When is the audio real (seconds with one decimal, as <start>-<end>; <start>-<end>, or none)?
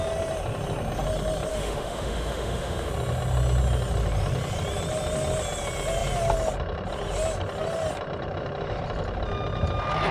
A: 0.0-1.5; 2.9-10.1